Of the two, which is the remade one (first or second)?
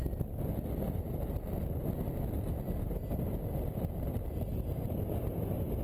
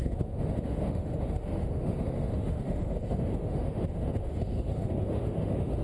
second